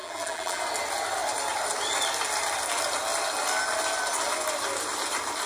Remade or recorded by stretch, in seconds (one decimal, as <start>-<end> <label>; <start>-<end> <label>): 0.0-0.6 remade; 0.6-5.5 recorded